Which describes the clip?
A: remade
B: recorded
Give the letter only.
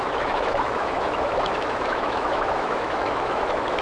A